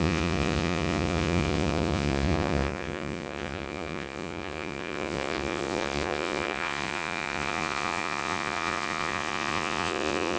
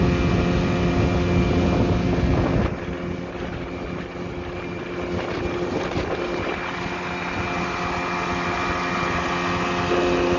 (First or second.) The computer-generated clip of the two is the first